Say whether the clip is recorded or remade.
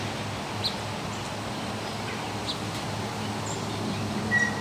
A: recorded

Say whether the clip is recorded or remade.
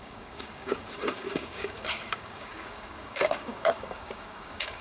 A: remade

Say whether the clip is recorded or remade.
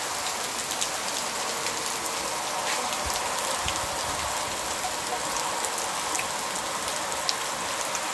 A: recorded